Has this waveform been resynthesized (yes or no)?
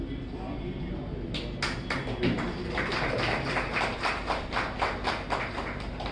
no